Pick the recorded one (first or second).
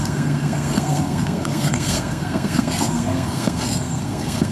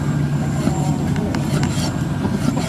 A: second